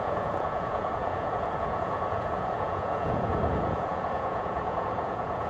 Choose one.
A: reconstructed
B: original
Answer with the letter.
A